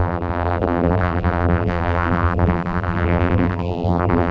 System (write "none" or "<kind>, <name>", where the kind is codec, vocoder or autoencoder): vocoder, BigVGAN v2